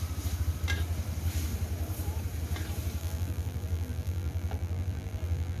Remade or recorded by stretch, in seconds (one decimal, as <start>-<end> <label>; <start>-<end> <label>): 0.0-3.0 recorded; 3.0-5.6 remade